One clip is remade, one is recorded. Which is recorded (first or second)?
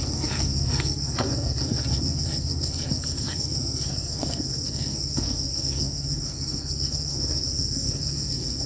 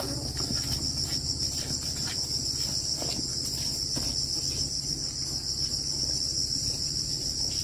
second